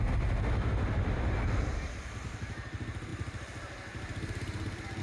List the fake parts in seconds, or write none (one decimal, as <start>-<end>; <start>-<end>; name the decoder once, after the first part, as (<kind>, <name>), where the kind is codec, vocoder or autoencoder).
none